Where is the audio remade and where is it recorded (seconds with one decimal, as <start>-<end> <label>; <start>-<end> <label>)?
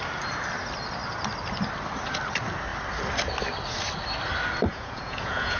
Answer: 0.0-4.7 recorded; 4.7-5.6 remade